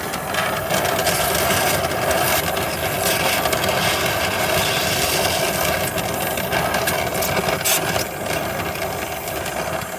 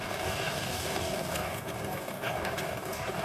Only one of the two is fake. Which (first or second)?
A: second